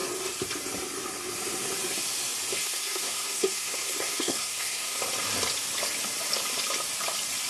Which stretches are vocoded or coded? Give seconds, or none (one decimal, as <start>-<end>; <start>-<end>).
2.6-5.0